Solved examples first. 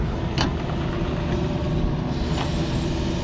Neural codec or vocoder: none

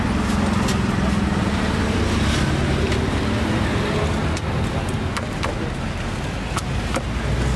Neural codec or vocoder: none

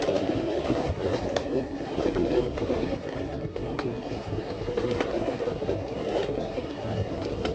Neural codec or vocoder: codec, SNAC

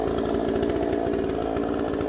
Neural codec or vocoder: none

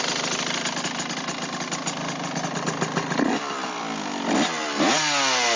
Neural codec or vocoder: none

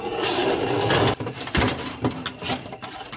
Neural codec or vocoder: none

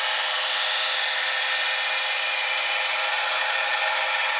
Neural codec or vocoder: none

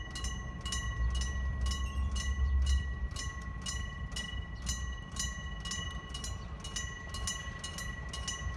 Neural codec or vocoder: none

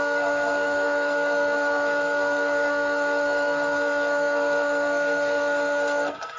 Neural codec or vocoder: codec, SNAC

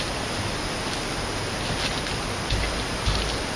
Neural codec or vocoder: none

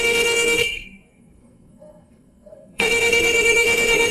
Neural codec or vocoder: codec, SNAC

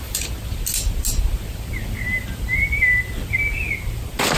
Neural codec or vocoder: none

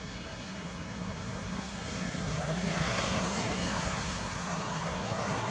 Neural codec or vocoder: codec, SNAC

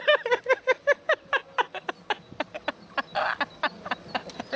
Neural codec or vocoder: none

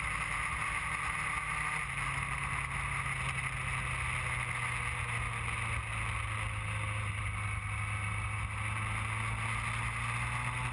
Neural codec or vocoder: none